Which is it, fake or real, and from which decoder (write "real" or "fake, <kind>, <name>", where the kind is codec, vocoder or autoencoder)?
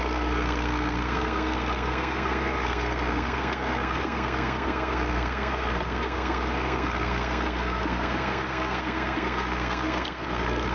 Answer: fake, codec, SNAC